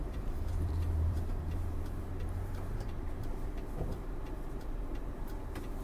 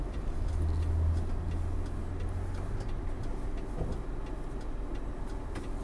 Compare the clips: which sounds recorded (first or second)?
second